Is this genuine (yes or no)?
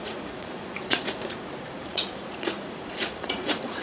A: no